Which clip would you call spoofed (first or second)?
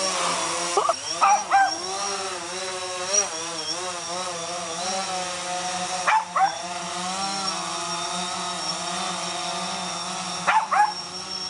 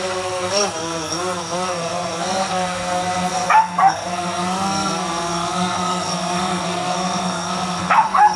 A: second